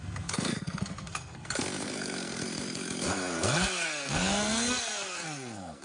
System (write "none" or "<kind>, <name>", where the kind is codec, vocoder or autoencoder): codec, SNAC